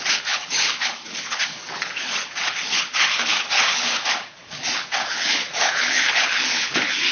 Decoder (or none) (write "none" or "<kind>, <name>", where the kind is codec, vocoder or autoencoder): codec, HILCodec